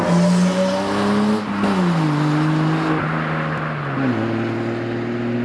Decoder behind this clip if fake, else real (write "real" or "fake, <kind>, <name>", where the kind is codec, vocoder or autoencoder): real